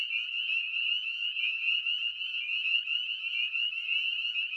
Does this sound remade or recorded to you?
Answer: remade